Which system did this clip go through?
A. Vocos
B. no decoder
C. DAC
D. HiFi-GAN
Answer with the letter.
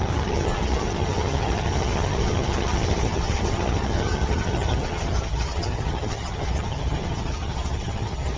D